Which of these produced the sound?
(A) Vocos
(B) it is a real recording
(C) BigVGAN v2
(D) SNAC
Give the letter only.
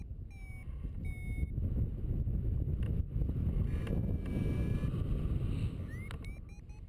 B